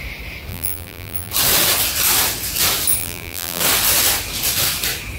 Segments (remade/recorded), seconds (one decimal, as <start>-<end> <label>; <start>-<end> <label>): 0.0-0.5 recorded; 0.5-1.3 remade; 1.3-3.0 recorded; 3.0-3.6 remade; 3.6-5.2 recorded